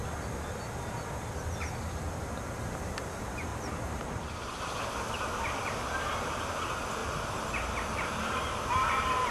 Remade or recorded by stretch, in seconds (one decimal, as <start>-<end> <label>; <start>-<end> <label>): 0.0-3.5 recorded; 3.5-4.5 remade; 4.5-7.0 recorded; 7.0-9.3 remade